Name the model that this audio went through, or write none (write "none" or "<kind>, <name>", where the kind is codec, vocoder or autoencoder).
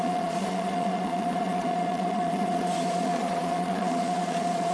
vocoder, Vocos